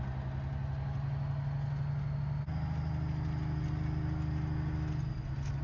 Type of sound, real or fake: real